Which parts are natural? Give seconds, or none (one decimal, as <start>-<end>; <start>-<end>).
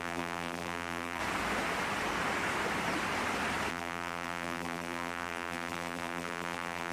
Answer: 1.2-3.7